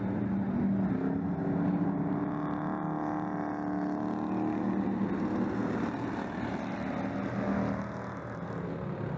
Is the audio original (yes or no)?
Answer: yes